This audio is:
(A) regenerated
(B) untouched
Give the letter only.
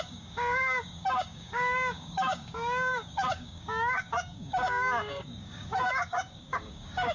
A